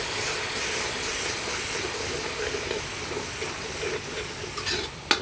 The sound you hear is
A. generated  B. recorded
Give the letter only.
B